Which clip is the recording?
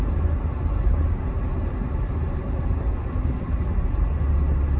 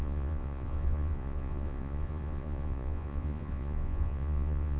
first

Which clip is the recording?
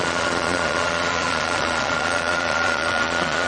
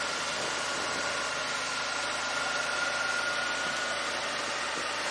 second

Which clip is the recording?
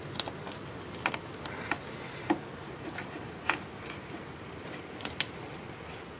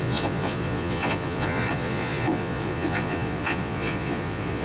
first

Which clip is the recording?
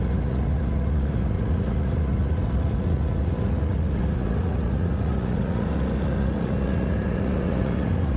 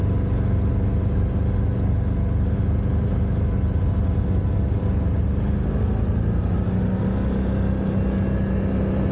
second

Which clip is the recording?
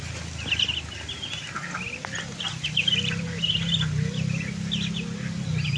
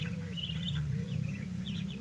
first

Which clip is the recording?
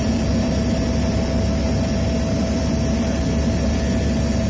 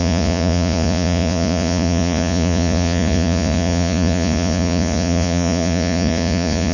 first